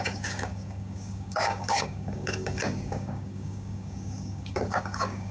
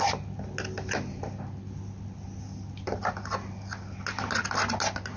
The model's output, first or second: first